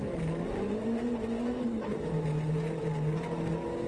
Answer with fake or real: real